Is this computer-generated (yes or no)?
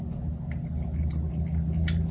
no